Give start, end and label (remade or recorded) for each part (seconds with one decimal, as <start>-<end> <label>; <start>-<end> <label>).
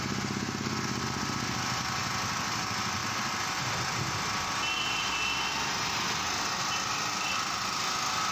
0.0-8.3 recorded